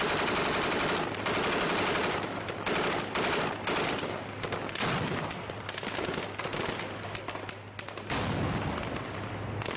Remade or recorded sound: recorded